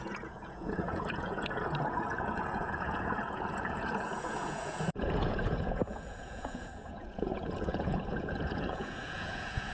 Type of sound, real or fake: fake